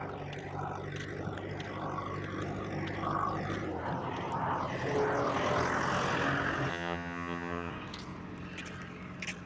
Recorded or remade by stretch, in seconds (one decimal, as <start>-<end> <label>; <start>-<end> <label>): 0.0-6.7 recorded; 6.7-7.7 remade; 7.7-9.5 recorded